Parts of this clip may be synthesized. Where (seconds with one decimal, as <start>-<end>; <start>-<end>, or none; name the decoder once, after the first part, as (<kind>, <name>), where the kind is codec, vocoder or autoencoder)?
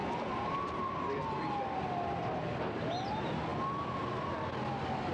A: none